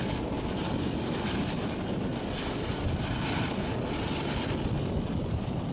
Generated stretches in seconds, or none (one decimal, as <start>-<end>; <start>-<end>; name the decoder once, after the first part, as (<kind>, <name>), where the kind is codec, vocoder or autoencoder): none